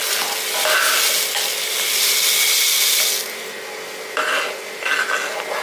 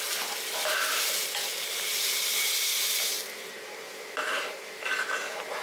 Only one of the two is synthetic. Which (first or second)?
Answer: second